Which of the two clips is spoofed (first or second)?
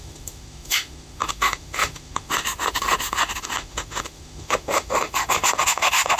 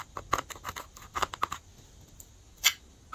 first